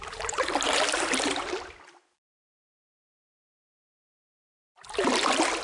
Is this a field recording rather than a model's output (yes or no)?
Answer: yes